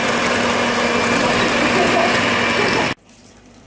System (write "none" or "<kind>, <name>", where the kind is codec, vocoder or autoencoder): none